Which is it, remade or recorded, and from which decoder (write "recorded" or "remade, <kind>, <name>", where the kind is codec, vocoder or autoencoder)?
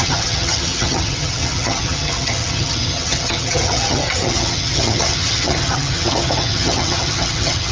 remade, vocoder, HiFi-GAN